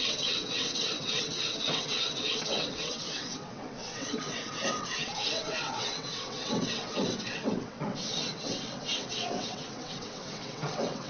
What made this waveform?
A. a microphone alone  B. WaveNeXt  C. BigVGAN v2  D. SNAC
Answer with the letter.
B